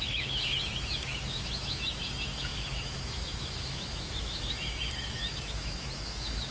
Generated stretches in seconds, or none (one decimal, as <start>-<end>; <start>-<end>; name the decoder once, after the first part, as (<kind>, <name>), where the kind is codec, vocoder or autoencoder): 0.0-6.5 (autoencoder, DAC-VAE)